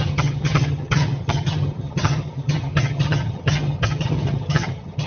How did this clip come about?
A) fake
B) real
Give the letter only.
A